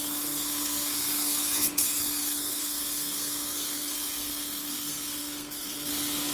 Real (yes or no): no